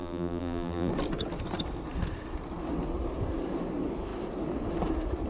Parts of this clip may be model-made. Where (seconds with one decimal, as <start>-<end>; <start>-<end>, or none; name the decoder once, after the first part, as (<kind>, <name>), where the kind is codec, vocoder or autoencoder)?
0.0-0.9 (vocoder, BigVGAN v2)

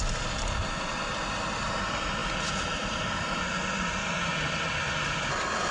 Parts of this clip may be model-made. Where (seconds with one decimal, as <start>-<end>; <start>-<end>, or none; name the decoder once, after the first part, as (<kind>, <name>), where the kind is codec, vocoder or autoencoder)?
none

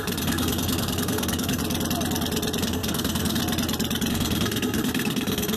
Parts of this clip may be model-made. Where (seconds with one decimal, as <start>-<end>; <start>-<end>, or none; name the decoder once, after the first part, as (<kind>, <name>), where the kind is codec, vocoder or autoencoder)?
0.0-1.6 (codec, SNAC); 2.6-3.4; 4.1-5.6

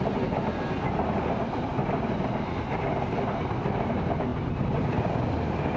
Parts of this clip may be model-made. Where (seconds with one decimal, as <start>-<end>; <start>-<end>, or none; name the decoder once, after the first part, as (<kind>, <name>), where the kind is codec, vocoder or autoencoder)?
none

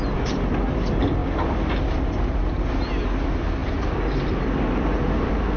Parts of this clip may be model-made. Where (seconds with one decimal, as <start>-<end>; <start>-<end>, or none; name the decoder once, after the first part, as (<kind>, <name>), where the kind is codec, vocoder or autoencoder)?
none

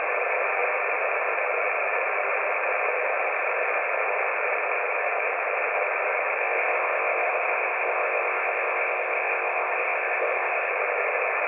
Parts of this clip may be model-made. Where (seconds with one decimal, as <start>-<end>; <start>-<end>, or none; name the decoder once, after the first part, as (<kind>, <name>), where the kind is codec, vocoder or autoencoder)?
6.4-10.7 (codec, ZipCodec)

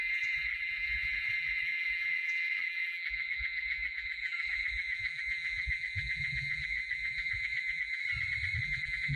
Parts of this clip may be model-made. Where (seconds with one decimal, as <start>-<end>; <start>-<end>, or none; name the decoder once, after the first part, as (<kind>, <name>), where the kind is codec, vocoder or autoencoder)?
0.0-8.0 (vocoder, BigVGAN v2); 8.6-9.2

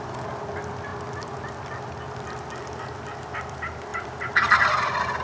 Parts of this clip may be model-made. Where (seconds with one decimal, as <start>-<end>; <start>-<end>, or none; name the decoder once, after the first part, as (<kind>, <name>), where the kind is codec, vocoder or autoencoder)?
3.9-4.6 (vocoder, BigVGAN v2)